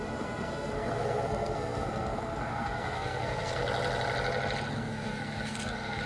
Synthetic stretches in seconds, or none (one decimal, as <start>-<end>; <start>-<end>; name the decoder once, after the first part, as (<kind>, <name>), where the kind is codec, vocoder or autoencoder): 0.0-3.6 (codec, SNAC); 4.7-6.1

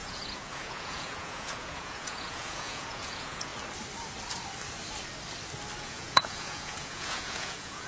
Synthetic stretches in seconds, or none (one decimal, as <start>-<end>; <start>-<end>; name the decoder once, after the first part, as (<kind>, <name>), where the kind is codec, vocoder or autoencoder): 0.0-3.5 (vocoder, Vocos); 5.8-7.9

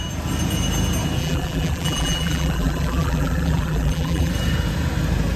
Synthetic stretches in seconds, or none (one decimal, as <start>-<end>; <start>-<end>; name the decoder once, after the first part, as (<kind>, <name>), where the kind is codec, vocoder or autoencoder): 1.2-4.3 (vocoder, BigVGAN v2)

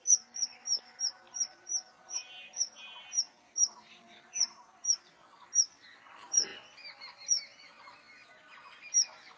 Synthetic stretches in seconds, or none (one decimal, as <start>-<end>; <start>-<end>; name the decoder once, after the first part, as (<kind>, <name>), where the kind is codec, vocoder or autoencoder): 1.3-5.1 (vocoder, BigVGAN v2)

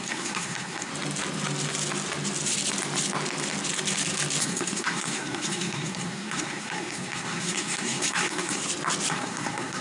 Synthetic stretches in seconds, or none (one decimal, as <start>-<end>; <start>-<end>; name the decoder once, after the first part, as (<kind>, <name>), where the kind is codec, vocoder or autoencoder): 0.0-0.9 (codec, SNAC); 4.4-8.6; 9.1-9.8

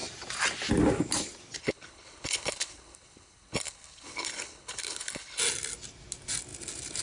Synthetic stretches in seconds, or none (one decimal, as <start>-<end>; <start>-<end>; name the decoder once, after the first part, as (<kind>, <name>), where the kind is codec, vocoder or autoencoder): 1.6-5.4 (codec, HILCodec)

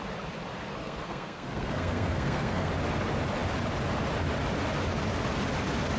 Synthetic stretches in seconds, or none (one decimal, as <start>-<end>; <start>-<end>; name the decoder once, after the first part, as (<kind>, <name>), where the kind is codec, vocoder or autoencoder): 0.8-2.7 (codec, SNAC)

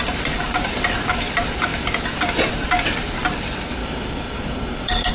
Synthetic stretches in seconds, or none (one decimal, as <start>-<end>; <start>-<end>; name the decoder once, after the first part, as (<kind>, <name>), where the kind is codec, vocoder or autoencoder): 3.8-5.1 (codec, DAC)